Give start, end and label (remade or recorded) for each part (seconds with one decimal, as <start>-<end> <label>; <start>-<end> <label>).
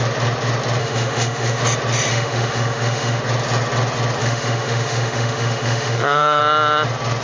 0.0-0.8 recorded; 0.8-1.6 remade; 1.6-2.1 recorded; 2.1-3.2 remade; 3.2-4.2 recorded; 4.2-6.4 remade; 6.4-7.2 recorded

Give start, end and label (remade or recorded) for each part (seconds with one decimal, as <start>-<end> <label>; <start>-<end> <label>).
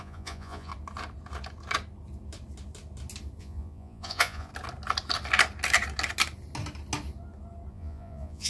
0.0-0.7 remade; 0.7-3.4 recorded; 3.4-4.5 remade; 4.5-7.7 recorded; 7.7-8.5 remade